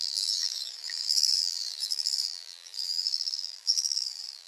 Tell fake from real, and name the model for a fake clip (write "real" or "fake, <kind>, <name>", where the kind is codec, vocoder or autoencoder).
fake, vocoder, BigVGAN v2